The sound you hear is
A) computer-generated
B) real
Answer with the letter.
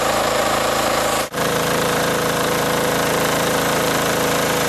A